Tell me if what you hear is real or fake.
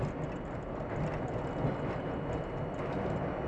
real